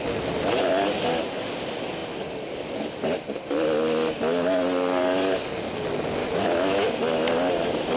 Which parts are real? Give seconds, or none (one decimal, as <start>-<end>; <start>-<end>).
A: 0.0-6.2; 7.0-8.0